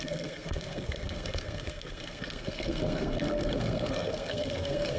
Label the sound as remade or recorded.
remade